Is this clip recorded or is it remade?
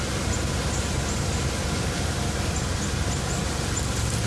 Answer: recorded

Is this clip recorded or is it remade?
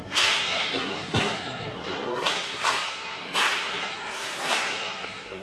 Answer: remade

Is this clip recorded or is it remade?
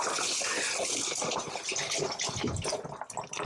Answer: recorded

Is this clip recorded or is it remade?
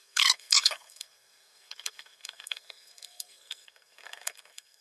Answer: remade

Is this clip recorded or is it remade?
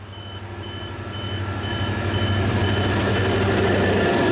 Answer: recorded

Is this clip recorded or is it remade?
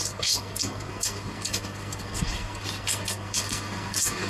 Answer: remade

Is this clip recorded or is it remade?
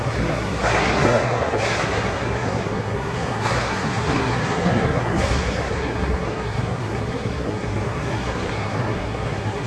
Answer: remade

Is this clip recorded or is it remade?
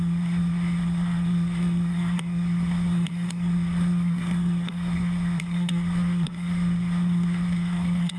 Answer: remade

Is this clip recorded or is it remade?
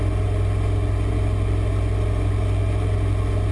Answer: recorded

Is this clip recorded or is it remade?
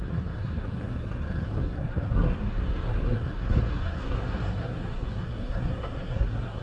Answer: remade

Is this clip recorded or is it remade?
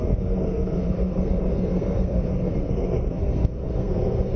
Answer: remade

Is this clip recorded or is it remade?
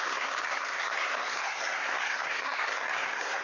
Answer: remade